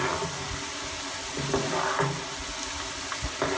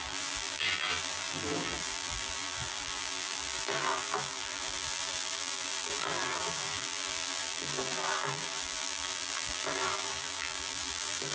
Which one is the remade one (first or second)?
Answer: second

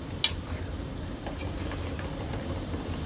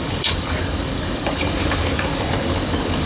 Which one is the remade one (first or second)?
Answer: second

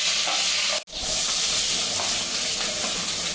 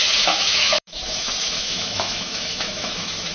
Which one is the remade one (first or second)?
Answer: second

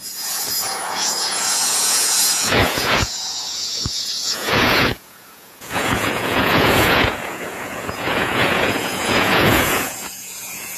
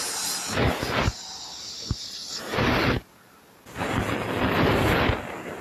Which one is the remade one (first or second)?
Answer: first